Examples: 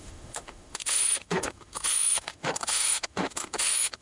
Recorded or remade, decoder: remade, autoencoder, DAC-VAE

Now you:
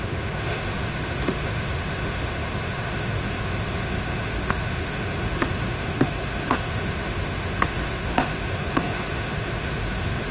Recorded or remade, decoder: remade, autoencoder, DAC-VAE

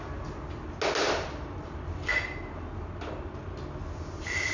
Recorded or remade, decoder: recorded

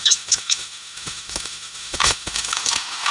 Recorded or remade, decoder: remade, autoencoder, DAC-VAE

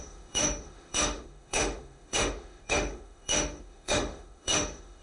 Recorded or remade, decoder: remade, autoencoder, DAC-VAE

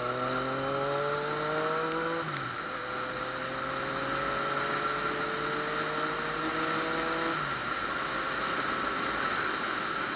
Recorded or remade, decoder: recorded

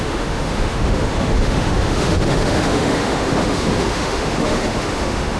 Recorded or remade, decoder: remade, autoencoder, DAC-VAE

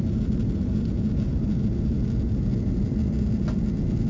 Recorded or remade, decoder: recorded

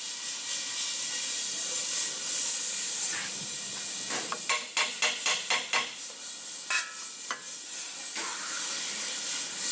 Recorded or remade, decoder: recorded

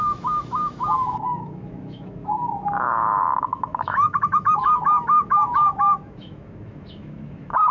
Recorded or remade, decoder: remade, autoencoder, DAC-VAE